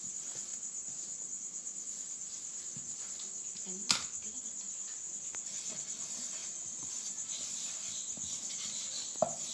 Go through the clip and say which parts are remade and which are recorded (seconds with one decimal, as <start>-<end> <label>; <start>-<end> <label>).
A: 0.0-9.5 recorded